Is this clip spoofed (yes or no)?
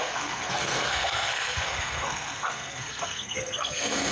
yes